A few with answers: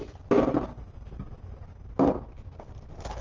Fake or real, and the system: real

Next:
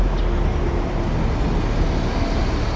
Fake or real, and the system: real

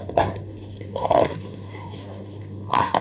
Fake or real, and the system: fake, codec, SNAC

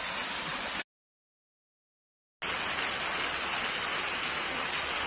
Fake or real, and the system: real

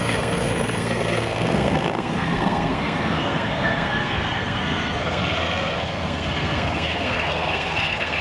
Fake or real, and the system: fake, codec, SNAC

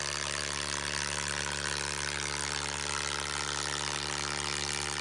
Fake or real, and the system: real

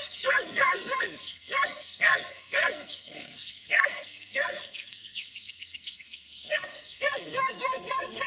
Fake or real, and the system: fake, codec, SNAC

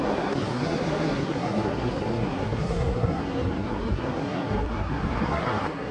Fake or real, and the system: fake, codec, SNAC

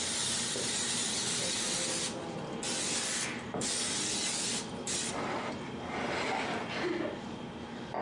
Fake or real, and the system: real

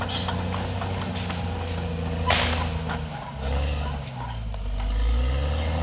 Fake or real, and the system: real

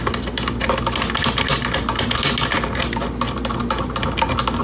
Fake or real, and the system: real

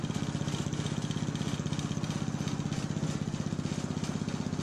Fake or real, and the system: real